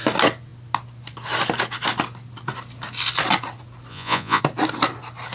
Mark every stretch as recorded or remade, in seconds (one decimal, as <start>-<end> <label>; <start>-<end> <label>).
0.0-3.9 recorded; 3.9-4.4 remade; 4.4-5.3 recorded